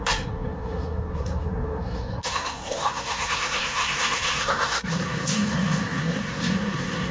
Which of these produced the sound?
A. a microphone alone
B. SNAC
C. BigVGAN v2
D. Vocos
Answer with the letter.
B